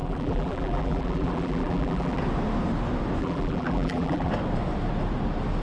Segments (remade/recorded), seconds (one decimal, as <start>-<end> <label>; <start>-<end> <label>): 0.0-2.2 remade; 2.2-3.2 recorded; 3.2-4.3 remade; 4.3-5.6 recorded